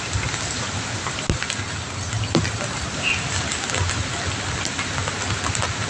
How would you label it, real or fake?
real